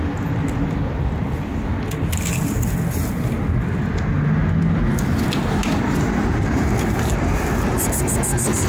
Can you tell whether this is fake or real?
real